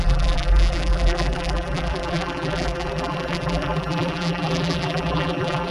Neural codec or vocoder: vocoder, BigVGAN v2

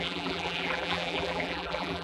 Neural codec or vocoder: vocoder, BigVGAN v2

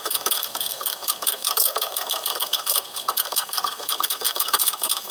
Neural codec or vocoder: codec, SNAC